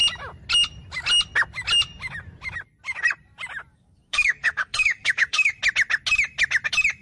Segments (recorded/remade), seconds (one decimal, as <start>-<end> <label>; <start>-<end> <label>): 0.0-3.7 recorded; 3.7-5.5 remade; 5.5-7.0 recorded